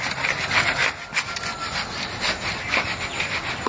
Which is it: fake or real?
real